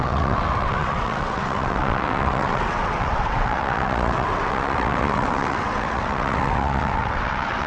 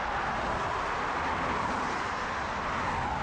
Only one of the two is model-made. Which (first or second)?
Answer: first